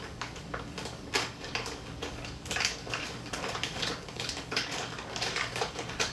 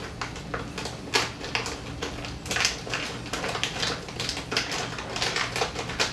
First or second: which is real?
second